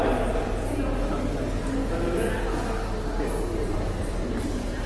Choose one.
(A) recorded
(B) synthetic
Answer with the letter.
A